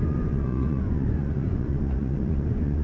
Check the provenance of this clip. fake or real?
fake